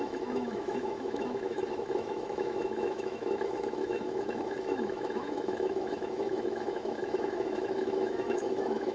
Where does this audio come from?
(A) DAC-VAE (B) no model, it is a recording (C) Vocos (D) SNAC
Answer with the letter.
A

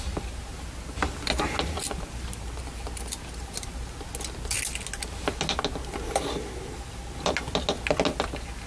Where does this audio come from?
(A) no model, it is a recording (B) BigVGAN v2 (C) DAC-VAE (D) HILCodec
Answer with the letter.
A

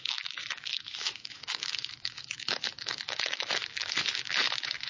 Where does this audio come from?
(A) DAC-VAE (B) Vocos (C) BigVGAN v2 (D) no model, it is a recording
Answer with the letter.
A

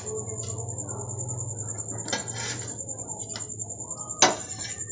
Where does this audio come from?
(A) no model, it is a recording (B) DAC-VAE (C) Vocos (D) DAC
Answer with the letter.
A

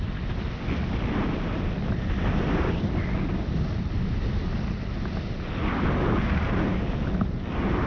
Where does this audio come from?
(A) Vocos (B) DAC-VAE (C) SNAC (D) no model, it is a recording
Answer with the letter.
D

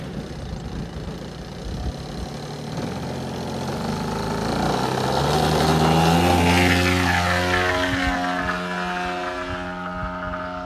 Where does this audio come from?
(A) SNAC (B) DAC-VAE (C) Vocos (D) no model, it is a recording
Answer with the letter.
D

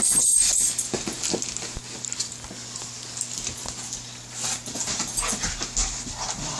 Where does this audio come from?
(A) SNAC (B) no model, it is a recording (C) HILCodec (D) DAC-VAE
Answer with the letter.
B